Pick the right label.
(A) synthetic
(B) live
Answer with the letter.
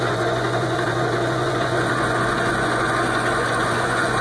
A